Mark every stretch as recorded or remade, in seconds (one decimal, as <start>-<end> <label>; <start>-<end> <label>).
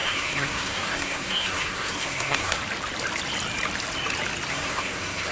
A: 0.0-2.6 remade; 2.6-4.5 recorded; 4.5-5.3 remade